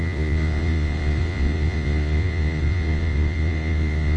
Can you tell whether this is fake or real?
fake